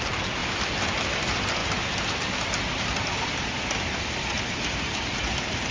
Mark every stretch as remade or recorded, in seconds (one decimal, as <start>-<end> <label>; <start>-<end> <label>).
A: 0.0-5.7 recorded